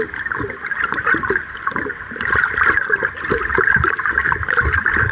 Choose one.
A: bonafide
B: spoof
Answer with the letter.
B